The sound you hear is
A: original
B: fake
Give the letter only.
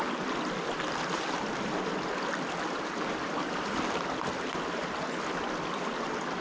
A